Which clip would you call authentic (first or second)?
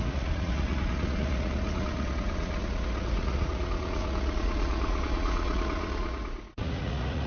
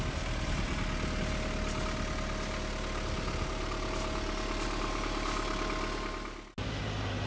second